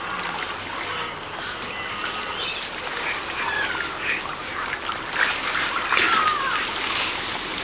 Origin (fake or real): fake